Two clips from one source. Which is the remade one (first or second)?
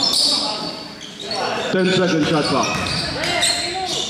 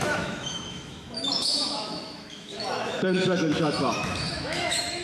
second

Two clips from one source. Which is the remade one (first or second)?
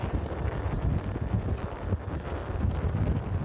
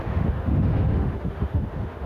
second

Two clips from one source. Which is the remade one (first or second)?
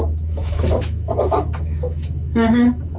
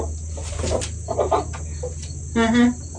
first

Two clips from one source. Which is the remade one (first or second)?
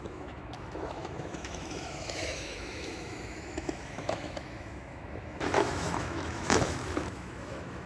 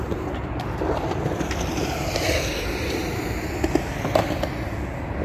first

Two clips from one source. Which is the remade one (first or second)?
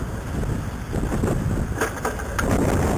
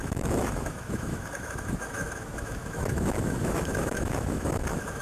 second